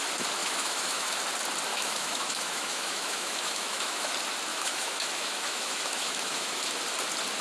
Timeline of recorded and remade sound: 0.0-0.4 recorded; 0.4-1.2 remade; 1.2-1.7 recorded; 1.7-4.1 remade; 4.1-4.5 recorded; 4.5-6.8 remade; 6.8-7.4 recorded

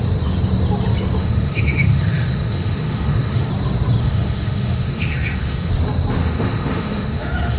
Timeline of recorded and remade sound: 0.0-1.2 recorded; 1.2-3.5 remade; 3.5-4.0 recorded; 4.0-5.7 remade; 5.7-6.2 recorded; 6.2-7.6 remade

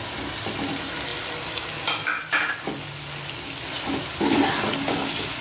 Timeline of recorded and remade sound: 0.0-5.4 recorded

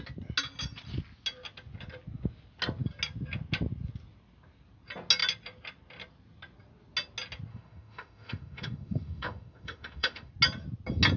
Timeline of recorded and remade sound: 0.0-7.5 recorded; 7.5-10.3 remade; 10.3-11.2 recorded

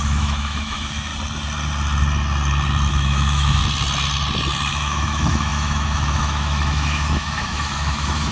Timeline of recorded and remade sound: 0.0-1.1 remade; 1.1-2.9 recorded; 2.9-3.6 remade; 3.6-4.7 recorded; 4.7-8.3 remade

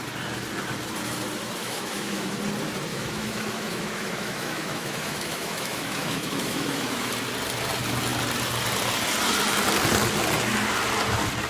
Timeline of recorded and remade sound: 0.0-1.6 recorded; 1.6-2.4 remade; 2.4-2.9 recorded; 2.9-7.1 remade; 7.1-11.5 recorded

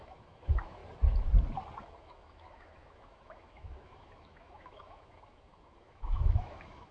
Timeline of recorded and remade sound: 0.0-0.8 remade; 0.8-1.8 recorded; 1.8-6.9 remade